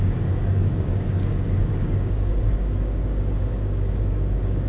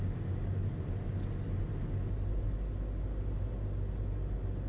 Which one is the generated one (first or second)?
first